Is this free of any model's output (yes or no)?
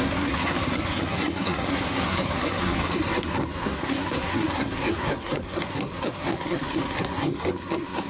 no